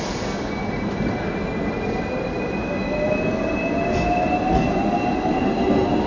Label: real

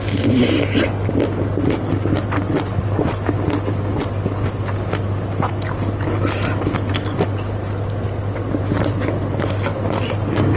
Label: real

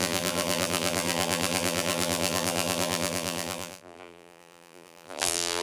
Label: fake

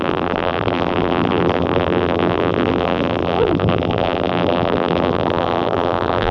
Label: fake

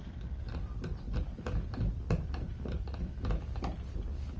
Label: real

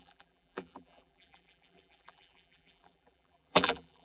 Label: fake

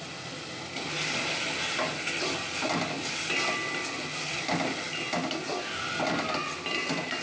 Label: real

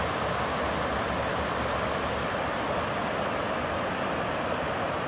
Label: fake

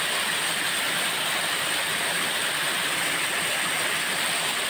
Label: real